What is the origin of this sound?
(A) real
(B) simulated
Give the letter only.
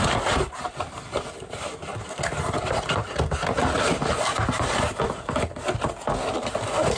A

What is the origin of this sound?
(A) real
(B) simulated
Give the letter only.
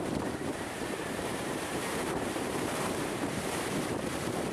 B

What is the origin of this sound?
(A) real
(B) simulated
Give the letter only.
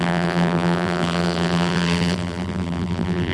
B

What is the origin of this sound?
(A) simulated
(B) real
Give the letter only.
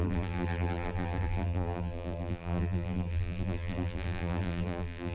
A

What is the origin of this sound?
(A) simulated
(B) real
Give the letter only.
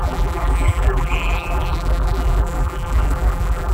A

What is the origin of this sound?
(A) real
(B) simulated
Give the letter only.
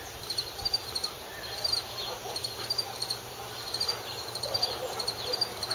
B